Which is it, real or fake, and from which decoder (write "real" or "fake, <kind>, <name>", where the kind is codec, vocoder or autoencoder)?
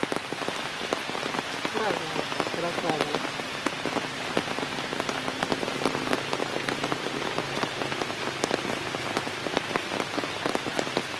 real